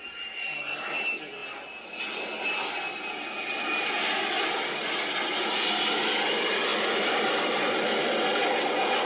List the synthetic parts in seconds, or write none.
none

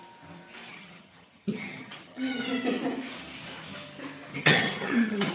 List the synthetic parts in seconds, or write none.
0.7-2.4 (vocoder, HiFi-GAN); 4.3-5.3

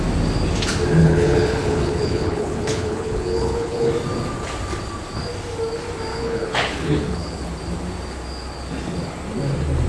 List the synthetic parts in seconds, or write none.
1.0-3.9 (codec, HILCodec); 6.1-7.5